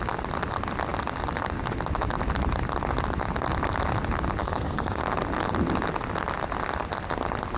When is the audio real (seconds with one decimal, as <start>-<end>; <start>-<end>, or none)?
0.0-4.4; 5.0-7.6